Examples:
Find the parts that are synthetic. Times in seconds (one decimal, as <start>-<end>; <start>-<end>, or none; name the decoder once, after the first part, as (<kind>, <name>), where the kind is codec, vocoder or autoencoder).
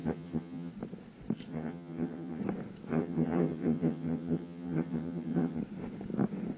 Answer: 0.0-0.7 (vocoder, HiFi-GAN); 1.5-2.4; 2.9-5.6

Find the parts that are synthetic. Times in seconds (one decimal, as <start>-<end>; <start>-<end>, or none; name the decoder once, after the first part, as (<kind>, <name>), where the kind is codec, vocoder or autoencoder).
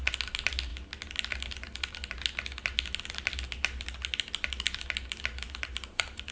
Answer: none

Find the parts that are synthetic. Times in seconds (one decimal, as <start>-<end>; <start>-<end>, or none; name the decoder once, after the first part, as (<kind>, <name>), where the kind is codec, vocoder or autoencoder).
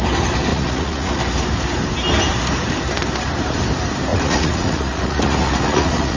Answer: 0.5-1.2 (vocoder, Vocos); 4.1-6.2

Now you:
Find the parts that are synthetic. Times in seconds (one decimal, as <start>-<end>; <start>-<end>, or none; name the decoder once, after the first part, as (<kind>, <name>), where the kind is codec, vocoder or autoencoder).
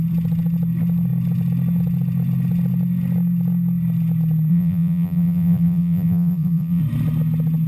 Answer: 4.5-6.8 (vocoder, BigVGAN v2)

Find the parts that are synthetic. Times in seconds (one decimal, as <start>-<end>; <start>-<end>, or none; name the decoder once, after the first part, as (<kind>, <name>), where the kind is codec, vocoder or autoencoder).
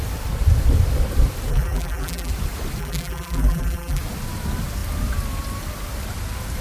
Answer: 1.5-2.3 (vocoder, BigVGAN v2); 2.8-4.0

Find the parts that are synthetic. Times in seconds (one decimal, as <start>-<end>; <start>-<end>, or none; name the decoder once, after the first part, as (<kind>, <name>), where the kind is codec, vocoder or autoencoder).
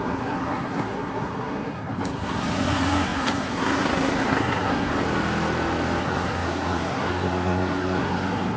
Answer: 0.0-4.9 (codec, SNAC); 6.0-8.6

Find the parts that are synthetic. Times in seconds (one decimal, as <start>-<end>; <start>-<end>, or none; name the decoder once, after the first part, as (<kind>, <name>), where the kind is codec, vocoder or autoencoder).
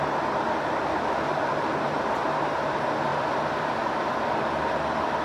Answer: 3.1-4.3 (vocoder, BigVGAN v2)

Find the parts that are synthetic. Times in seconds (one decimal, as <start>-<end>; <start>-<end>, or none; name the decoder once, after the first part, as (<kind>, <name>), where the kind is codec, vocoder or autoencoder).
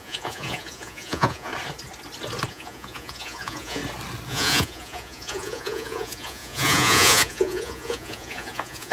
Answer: 0.0-1.5 (vocoder, Vocos); 2.5-3.8; 4.3-8.9